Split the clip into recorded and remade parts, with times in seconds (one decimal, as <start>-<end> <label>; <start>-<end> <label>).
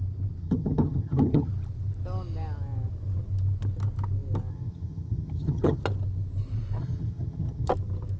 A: 0.0-0.4 recorded; 0.4-1.5 remade; 1.5-4.5 recorded; 4.5-5.8 remade; 5.8-6.8 recorded; 6.8-7.7 remade; 7.7-8.2 recorded